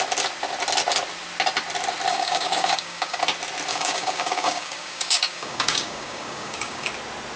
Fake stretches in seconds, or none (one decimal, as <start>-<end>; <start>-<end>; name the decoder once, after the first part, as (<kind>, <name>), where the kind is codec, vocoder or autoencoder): 2.1-3.2 (codec, DAC); 3.7-6.9